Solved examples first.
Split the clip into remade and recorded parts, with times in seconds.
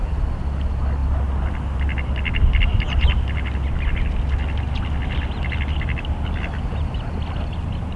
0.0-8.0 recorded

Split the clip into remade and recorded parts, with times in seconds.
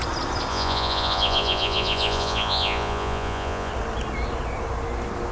0.0-0.5 recorded; 0.5-3.7 remade; 3.7-5.3 recorded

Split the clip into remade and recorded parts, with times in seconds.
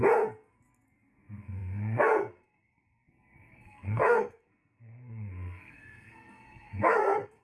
0.0-7.4 remade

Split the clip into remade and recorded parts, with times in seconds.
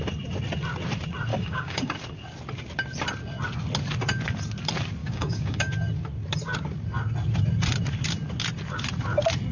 0.0-1.3 recorded; 1.3-1.9 remade; 1.9-5.0 recorded; 5.0-5.7 remade; 5.7-9.5 recorded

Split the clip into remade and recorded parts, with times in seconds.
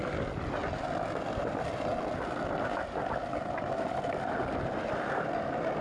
0.0-5.8 recorded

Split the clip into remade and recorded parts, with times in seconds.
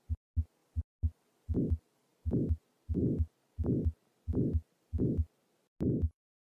0.0-6.5 recorded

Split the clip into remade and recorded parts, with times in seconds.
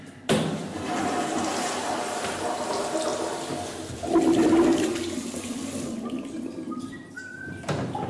0.0-8.1 recorded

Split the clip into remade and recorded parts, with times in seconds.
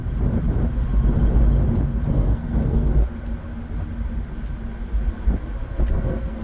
0.0-2.1 recorded; 2.1-2.9 remade; 2.9-5.9 recorded; 5.9-6.4 remade